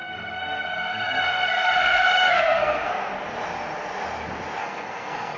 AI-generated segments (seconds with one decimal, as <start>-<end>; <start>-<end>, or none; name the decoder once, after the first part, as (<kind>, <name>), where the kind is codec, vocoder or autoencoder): 0.0-3.1 (codec, SNAC); 4.6-5.4

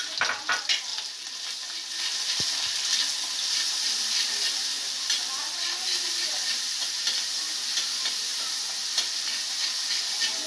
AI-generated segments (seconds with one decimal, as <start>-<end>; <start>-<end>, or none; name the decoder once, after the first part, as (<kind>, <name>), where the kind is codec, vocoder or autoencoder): none